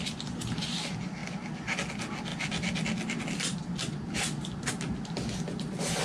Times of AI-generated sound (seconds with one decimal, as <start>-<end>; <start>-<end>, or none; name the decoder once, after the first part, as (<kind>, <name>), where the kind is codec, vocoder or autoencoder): none